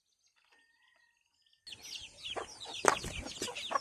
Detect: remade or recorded recorded